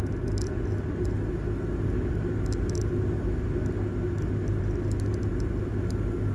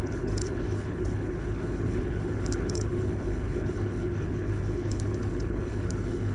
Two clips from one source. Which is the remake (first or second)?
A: second